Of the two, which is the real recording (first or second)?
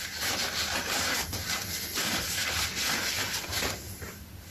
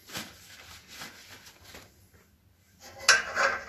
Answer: second